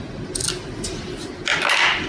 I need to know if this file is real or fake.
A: real